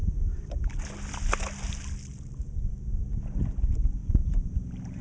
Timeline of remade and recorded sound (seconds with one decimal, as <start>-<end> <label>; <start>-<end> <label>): 0.0-0.6 remade; 0.6-2.1 recorded; 2.1-2.7 remade; 2.7-4.0 recorded; 4.0-5.0 remade